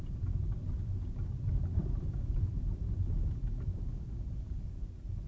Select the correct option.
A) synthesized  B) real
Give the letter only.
B